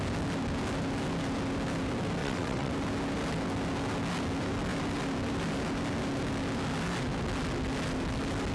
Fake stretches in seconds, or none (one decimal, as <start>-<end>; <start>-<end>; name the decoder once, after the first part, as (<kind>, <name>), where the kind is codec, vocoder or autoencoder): 2.2-2.7 (vocoder, WaveNeXt)